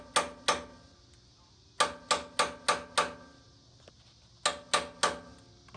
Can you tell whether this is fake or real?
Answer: real